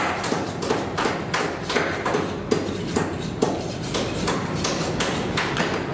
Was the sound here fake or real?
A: real